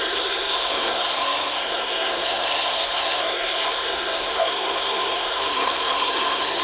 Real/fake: fake